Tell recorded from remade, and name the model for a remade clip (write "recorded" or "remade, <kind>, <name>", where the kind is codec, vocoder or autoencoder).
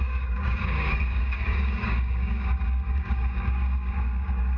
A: remade, codec, DAC